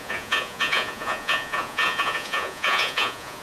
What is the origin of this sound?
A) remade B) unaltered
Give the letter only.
A